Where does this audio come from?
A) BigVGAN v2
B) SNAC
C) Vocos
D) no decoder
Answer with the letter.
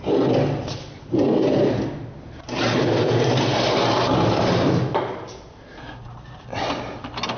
D